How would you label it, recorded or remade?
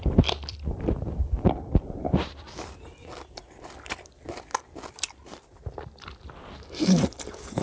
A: remade